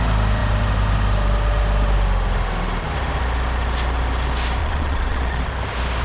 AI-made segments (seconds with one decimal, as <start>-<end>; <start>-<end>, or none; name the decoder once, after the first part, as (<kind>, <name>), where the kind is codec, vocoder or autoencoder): 4.6-5.4 (vocoder, Vocos)